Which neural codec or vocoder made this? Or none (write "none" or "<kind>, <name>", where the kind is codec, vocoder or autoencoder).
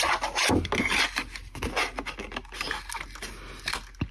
none